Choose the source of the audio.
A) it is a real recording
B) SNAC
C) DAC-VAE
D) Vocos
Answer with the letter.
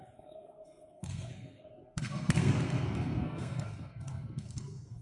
B